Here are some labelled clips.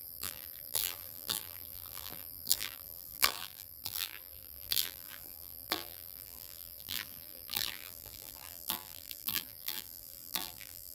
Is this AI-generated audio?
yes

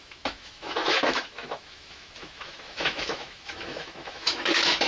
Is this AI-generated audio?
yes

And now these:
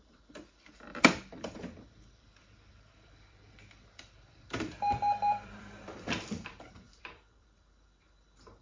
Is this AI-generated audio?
yes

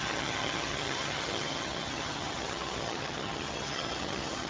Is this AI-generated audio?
yes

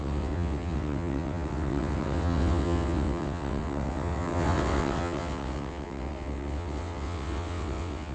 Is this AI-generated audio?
yes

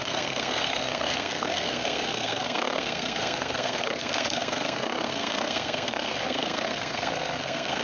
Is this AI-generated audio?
yes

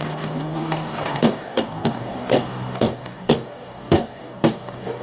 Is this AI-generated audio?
yes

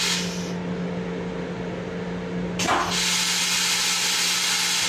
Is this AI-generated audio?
no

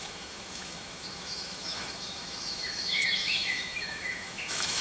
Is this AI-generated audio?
yes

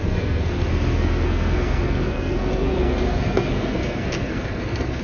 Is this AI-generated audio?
yes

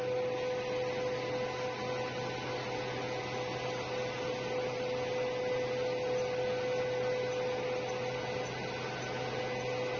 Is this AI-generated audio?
no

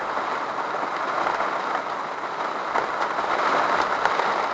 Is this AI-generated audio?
no